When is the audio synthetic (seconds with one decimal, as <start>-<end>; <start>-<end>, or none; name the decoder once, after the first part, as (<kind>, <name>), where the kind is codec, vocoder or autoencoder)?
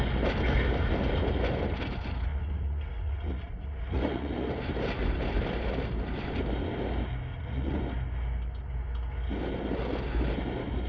2.3-4.5 (vocoder, Vocos); 7.3-7.8